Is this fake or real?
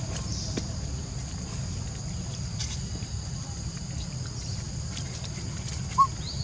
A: real